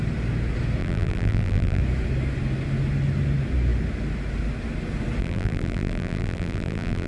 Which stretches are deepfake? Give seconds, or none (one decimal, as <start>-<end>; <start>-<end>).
0.8-1.8; 5.2-7.1